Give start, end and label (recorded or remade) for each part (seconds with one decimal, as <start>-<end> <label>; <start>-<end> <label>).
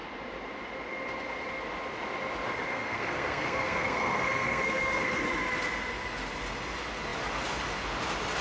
0.0-2.7 recorded; 2.7-5.2 remade; 5.2-8.4 recorded